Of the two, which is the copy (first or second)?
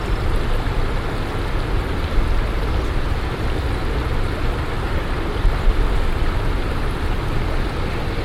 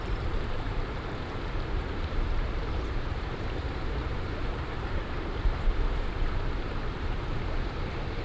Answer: second